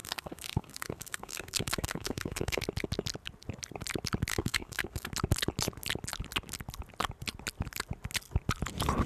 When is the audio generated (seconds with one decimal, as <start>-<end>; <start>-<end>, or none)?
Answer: 0.0-2.6; 4.3-5.1